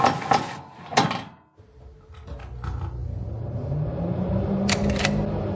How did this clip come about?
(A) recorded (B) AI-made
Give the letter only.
A